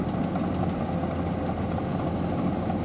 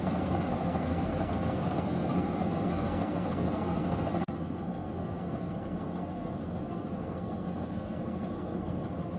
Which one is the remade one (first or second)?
second